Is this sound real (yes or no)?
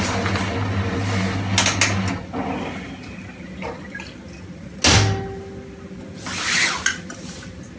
yes